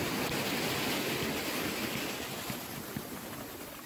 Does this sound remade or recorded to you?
recorded